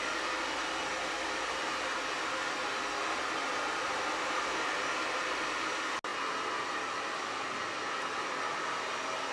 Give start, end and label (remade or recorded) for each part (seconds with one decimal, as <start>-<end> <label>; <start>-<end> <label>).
0.0-9.3 recorded